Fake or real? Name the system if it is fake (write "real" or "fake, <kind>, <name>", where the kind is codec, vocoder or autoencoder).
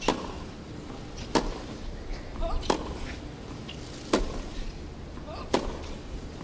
real